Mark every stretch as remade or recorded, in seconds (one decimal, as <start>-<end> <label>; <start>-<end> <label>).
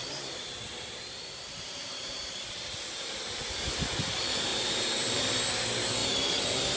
0.0-3.6 remade; 3.6-4.5 recorded; 4.5-5.4 remade; 5.4-6.0 recorded; 6.0-6.8 remade